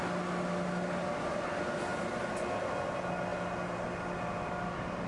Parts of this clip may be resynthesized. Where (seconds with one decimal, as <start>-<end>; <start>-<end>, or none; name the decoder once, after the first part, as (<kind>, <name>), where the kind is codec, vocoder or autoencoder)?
none